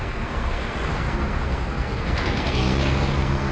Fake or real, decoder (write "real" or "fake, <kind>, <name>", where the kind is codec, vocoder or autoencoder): fake, codec, SNAC